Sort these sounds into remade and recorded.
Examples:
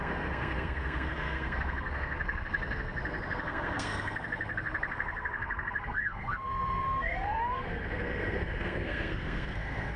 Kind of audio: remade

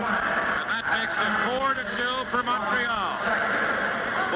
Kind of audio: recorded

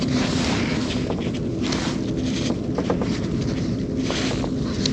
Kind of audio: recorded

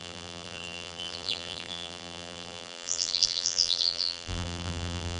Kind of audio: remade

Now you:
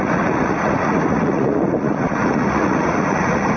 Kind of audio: remade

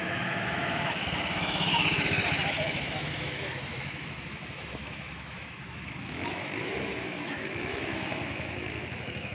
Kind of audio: remade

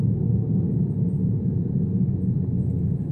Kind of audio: recorded